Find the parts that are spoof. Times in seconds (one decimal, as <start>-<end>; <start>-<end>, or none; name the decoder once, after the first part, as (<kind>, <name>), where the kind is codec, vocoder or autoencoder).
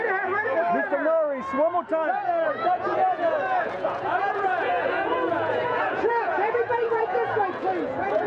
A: 0.0-0.6 (vocoder, Vocos); 2.5-8.3